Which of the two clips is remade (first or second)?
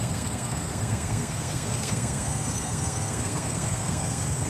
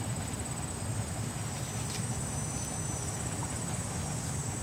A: first